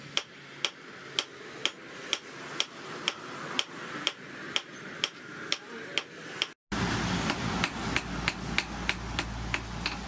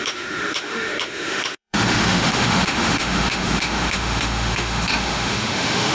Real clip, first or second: first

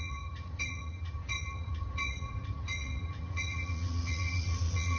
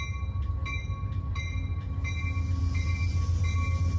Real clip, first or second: second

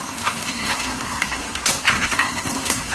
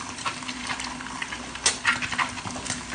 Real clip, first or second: second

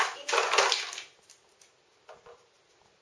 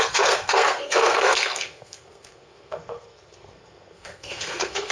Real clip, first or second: first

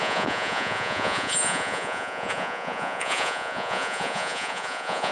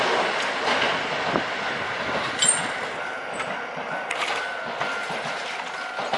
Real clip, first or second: second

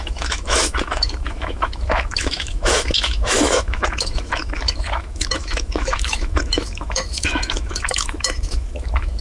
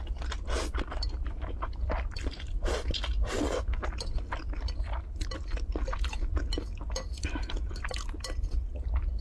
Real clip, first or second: second